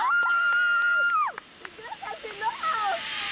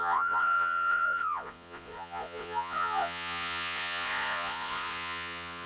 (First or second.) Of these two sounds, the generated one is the second